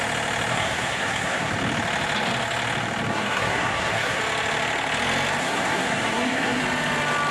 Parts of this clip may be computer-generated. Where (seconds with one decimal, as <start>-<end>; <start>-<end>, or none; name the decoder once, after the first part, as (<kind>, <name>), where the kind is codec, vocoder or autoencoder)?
0.5-1.5 (codec, SNAC); 3.1-4.2; 5.4-6.6